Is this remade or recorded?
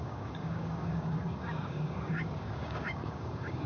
remade